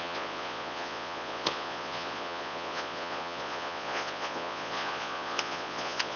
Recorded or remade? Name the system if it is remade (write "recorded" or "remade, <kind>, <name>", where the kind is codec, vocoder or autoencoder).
remade, vocoder, Vocos